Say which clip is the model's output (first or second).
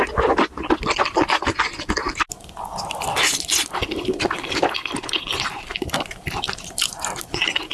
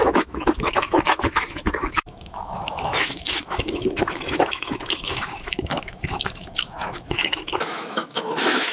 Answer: second